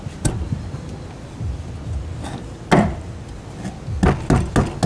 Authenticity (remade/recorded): recorded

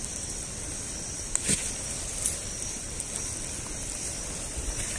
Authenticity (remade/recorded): recorded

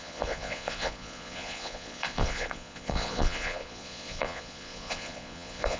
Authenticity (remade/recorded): remade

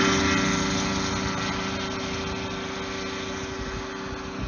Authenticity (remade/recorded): recorded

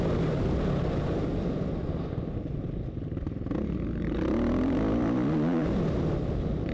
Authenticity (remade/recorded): recorded